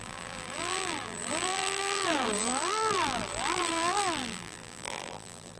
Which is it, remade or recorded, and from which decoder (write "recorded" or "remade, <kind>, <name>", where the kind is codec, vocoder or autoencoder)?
remade, vocoder, BigVGAN v2